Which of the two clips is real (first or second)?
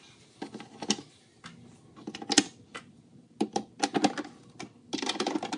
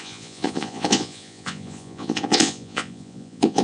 first